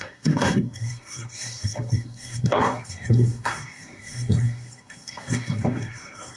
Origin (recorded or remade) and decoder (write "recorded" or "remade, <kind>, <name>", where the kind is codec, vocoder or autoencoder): remade, codec, SNAC